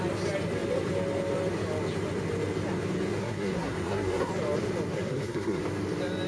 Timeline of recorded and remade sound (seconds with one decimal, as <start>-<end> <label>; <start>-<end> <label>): 0.0-3.2 recorded; 3.2-4.3 remade; 4.3-4.9 recorded; 4.9-5.6 remade; 5.6-6.3 recorded